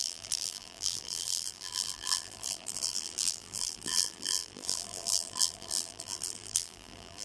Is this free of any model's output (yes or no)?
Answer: no